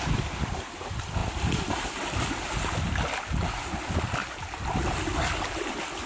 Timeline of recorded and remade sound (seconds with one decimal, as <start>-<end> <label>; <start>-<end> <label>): 0.0-1.2 recorded; 1.2-2.0 remade; 2.0-6.1 recorded